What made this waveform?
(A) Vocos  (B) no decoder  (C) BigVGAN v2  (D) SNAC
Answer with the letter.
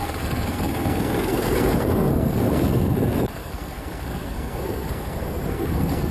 D